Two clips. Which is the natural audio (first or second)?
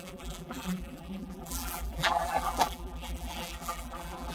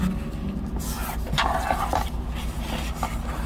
second